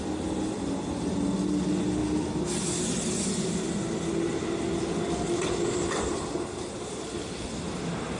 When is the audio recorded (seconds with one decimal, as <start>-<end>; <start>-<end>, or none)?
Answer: 0.0-8.2